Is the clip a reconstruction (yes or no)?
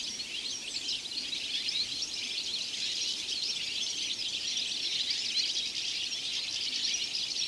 yes